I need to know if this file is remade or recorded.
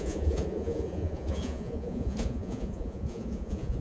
remade